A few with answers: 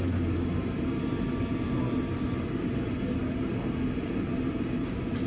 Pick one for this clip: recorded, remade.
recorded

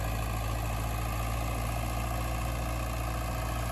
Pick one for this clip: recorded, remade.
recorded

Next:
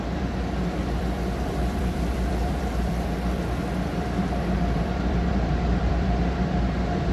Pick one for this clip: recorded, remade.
remade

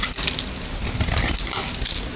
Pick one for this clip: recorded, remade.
recorded